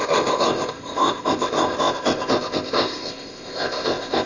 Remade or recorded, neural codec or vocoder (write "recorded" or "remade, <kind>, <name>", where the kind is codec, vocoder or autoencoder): remade, codec, ZipCodec